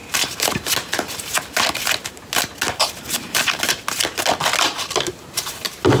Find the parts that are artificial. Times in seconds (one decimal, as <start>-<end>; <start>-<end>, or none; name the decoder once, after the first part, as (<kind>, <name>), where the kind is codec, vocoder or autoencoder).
none